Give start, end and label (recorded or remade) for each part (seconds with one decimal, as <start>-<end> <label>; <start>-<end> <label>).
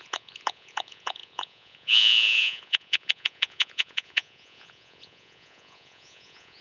0.0-6.6 remade